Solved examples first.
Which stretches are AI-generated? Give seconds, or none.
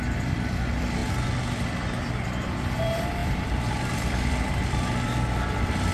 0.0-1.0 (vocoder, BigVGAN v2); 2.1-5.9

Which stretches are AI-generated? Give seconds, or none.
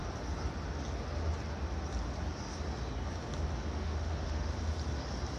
3.7-4.5 (autoencoder, DAC-VAE)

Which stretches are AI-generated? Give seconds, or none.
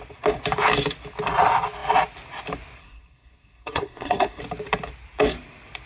2.8-4.4 (codec, SNAC)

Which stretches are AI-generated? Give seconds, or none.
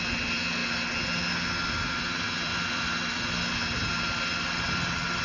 none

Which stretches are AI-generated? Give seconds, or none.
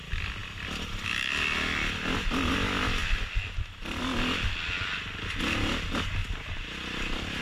6.2-7.4 (vocoder, BigVGAN v2)